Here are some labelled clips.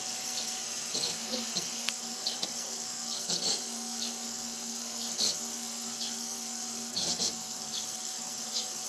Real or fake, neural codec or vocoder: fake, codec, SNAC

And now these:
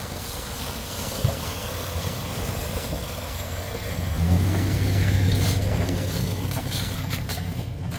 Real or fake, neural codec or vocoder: fake, codec, SNAC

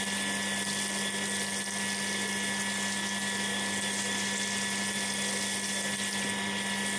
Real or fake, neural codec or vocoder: real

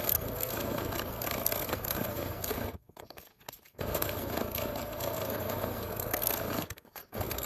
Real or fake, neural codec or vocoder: fake, codec, SNAC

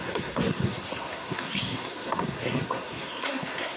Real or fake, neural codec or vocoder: fake, codec, SNAC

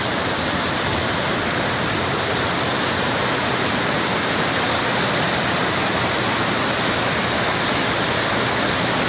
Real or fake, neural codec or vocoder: real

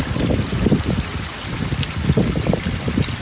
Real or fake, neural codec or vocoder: real